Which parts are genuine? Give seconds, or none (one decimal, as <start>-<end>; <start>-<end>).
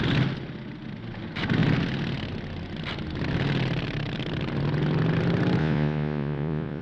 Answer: 0.0-5.6